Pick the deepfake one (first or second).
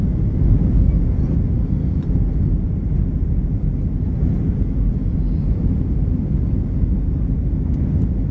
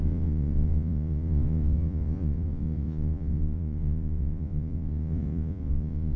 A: second